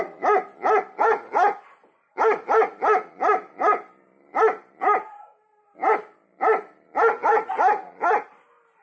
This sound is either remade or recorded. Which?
recorded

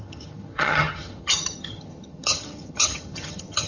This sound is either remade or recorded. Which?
remade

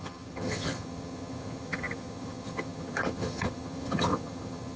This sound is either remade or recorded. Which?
remade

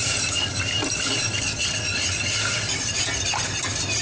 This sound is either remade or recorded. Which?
recorded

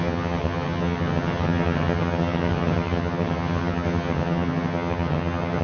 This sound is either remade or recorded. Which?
remade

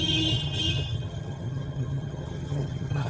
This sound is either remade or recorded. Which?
remade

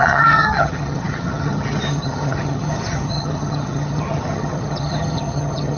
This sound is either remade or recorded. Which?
remade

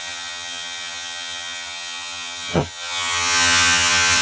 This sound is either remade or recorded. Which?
remade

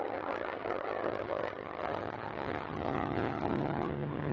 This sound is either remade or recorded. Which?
remade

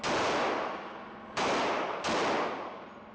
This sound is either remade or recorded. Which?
recorded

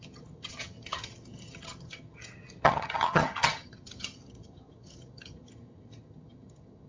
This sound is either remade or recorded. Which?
remade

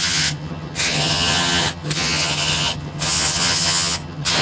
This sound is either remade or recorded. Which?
remade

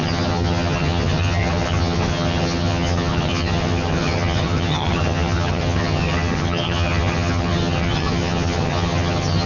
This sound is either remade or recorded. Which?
remade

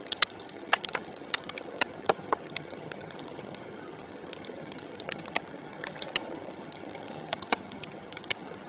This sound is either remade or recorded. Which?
remade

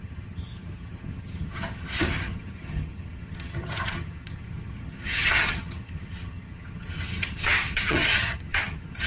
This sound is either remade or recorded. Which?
remade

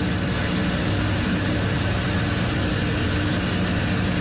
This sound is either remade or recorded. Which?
recorded